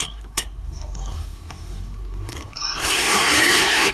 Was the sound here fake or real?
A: fake